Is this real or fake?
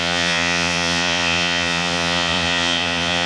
fake